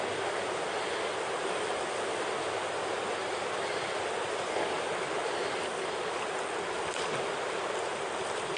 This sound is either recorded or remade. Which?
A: recorded